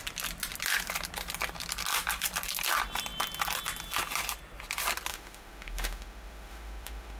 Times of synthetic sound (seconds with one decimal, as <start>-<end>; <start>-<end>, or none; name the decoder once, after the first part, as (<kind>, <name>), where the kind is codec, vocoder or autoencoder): 5.1-7.2 (autoencoder, DAC-VAE)